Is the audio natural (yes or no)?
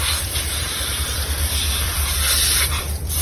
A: no